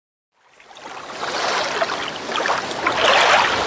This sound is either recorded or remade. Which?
recorded